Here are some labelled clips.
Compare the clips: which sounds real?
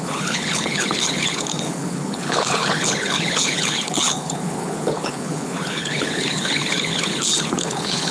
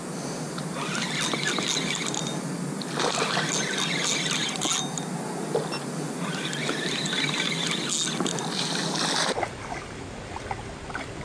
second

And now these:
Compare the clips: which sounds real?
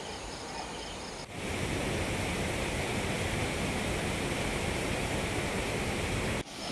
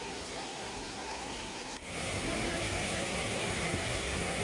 first